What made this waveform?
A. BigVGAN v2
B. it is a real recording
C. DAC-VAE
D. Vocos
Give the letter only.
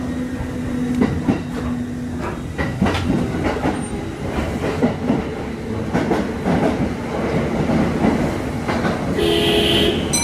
B